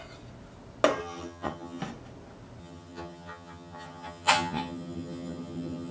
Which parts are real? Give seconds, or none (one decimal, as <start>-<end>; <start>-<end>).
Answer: 0.0-1.0; 1.8-2.6